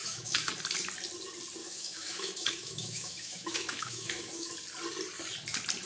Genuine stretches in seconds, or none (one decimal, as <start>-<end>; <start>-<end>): 0.5-1.6; 4.5-5.9